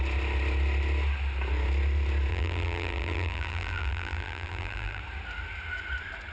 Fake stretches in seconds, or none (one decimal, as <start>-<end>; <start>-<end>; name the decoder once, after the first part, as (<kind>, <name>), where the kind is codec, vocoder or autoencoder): 2.3-5.0 (vocoder, BigVGAN v2)